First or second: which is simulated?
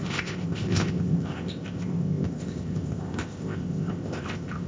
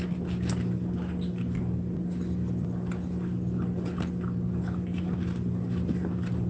first